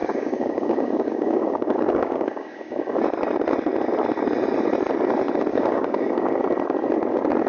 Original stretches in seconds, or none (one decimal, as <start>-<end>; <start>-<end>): 3.0-5.5; 6.4-7.5